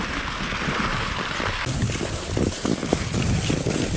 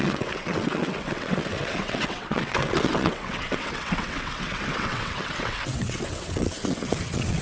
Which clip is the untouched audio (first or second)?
first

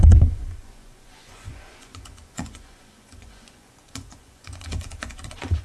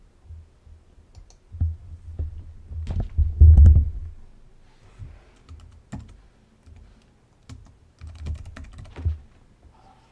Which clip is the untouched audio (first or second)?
second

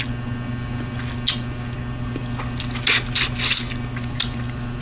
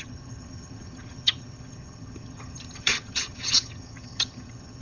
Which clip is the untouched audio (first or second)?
first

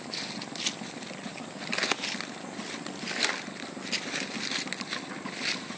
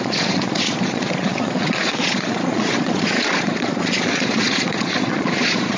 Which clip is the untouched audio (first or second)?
first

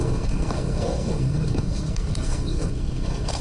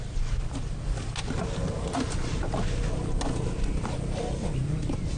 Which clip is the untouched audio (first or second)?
second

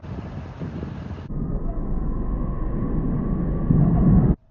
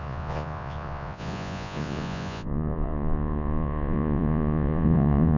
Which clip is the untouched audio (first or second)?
first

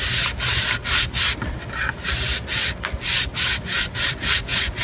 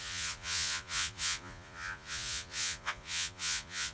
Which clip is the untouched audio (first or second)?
first